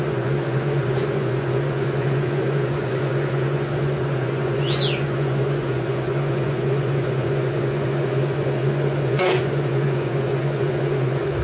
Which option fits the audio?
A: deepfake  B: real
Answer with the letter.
A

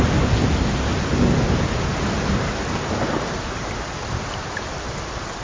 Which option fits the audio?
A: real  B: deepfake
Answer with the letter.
A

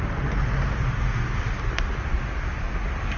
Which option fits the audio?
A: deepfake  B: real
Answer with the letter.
B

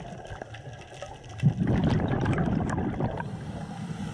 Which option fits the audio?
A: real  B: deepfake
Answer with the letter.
A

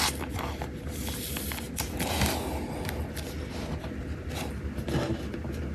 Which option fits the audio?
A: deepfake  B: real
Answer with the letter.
B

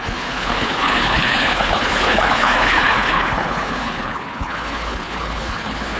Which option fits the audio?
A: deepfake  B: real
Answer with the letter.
A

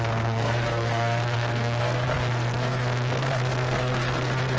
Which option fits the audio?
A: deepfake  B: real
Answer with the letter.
A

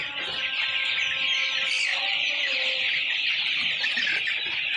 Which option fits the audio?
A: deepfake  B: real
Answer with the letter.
B